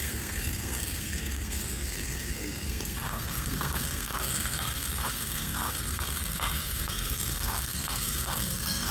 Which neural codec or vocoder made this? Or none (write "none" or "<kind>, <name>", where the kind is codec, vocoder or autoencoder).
codec, SNAC